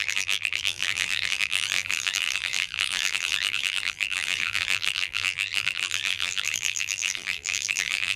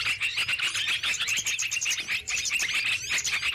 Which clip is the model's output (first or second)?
first